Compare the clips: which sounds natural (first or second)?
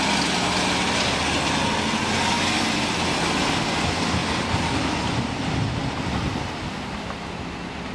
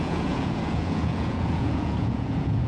first